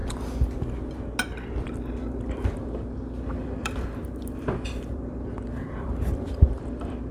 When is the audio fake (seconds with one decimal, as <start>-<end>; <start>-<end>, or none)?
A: 1.9-7.1